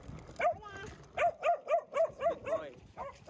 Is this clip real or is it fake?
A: fake